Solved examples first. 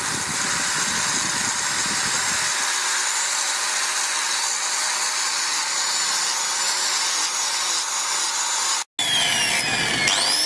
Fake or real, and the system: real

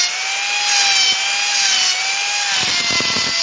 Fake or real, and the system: real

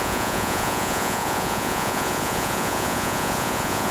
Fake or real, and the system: fake, vocoder, Vocos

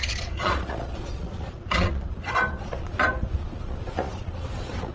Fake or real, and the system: fake, vocoder, Vocos